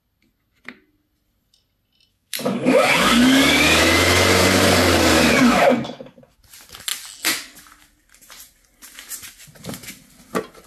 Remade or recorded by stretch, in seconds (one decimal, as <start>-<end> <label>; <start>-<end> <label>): 0.0-2.1 recorded; 2.1-3.8 remade; 3.8-4.4 recorded; 4.4-6.4 remade; 6.4-10.7 recorded